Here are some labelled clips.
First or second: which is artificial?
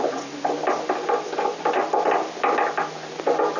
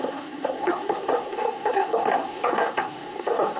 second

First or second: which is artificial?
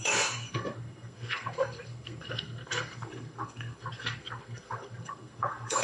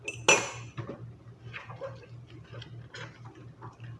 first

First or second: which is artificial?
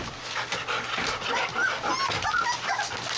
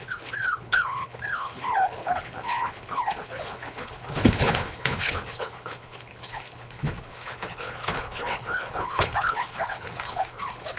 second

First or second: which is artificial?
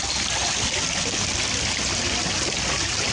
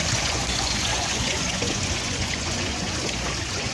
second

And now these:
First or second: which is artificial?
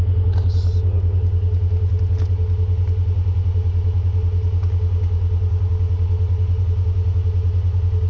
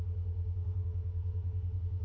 second